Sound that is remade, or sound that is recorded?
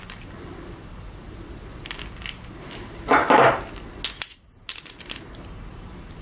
recorded